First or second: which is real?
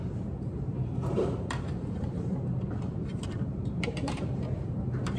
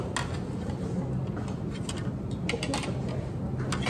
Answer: second